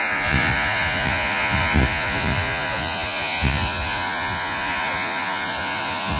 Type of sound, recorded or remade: remade